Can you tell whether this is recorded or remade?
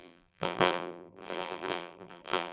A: remade